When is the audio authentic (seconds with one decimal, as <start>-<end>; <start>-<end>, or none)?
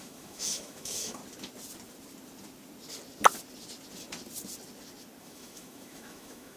1.2-5.2